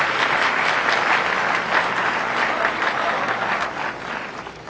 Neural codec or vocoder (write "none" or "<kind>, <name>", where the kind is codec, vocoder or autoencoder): none